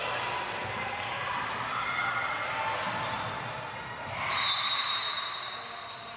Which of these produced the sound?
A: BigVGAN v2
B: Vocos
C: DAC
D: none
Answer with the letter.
D